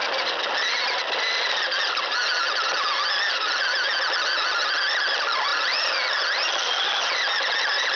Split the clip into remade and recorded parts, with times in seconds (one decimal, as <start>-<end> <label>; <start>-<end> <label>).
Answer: 0.0-8.0 recorded